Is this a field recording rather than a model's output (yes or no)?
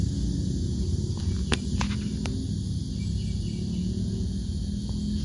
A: yes